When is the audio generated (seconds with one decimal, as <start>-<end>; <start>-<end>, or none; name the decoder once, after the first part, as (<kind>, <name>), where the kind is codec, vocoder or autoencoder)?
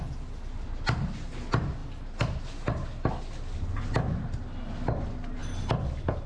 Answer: none